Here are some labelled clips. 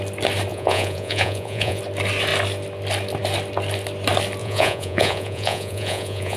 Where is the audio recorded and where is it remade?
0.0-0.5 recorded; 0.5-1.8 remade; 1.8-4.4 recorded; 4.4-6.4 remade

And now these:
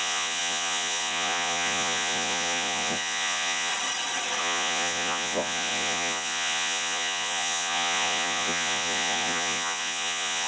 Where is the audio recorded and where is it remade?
0.0-3.7 remade; 3.7-4.4 recorded; 4.4-10.5 remade

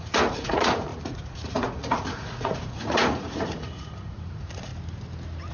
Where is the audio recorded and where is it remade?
0.0-4.7 remade; 4.7-5.5 recorded

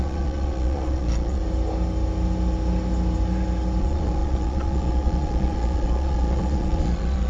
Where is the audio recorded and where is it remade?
0.0-1.4 remade; 1.4-3.8 recorded; 3.8-7.3 remade

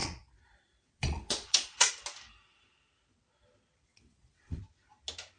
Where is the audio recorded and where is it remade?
0.0-1.9 remade; 1.9-3.9 recorded; 3.9-4.6 remade; 4.6-5.4 recorded

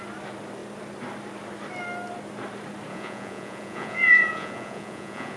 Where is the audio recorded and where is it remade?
0.0-2.9 recorded; 2.9-5.4 remade

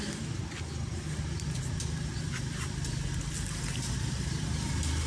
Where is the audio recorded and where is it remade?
0.0-5.1 recorded